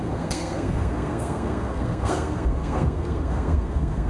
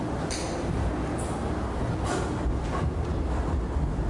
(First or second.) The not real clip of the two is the first